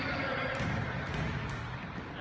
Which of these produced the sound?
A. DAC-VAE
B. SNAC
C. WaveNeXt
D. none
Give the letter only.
D